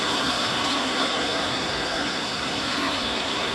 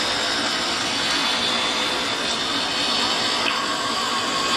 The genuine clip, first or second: second